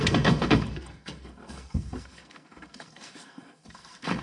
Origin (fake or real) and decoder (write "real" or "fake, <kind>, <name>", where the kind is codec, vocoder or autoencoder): fake, codec, SNAC